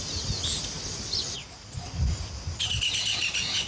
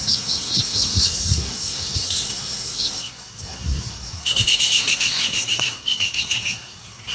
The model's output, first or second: second